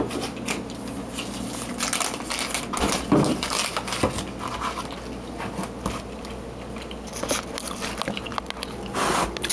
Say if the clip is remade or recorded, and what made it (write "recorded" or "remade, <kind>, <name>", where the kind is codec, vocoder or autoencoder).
recorded